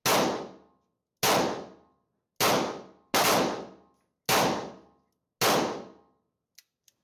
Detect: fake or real real